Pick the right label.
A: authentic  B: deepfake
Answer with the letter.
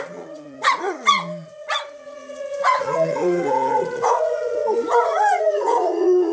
B